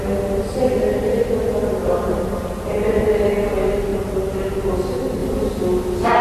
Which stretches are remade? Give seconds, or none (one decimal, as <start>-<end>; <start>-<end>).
1.8-3.4; 3.9-4.6